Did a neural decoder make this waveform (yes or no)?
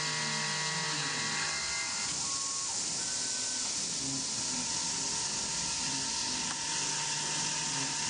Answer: no